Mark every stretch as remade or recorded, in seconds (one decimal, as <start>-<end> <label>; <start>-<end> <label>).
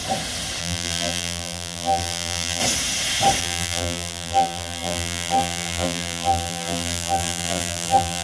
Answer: 0.0-0.6 recorded; 0.6-2.6 remade; 2.6-3.4 recorded; 3.4-8.2 remade